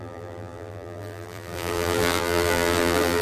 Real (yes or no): no